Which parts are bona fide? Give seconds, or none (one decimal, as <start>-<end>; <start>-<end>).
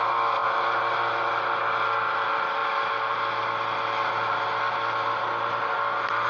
0.0-6.3